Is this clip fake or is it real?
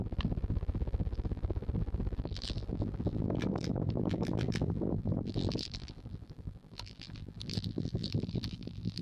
fake